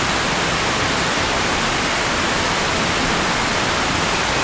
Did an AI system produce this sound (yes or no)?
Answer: yes